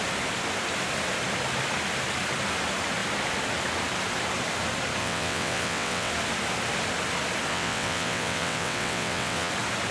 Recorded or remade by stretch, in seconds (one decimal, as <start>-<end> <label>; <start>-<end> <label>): 0.0-5.0 recorded; 5.0-6.1 remade; 6.1-7.5 recorded; 7.5-9.5 remade; 9.5-9.9 recorded

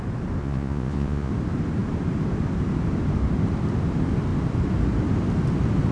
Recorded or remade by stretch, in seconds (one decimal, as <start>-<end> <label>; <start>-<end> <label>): 0.0-0.4 recorded; 0.4-1.3 remade; 1.3-5.9 recorded

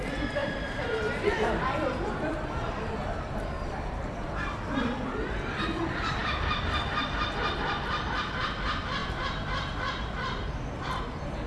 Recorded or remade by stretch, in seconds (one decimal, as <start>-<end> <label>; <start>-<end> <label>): 0.0-0.4 recorded; 0.4-5.1 remade; 5.1-9.0 recorded; 9.0-11.0 remade; 11.0-11.5 recorded